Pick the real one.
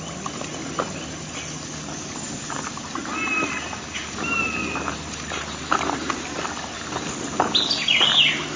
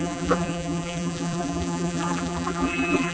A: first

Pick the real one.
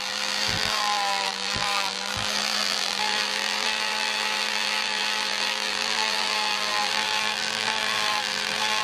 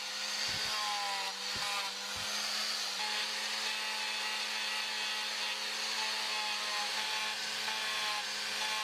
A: second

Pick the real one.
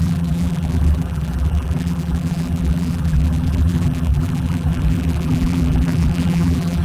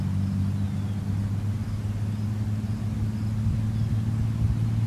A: second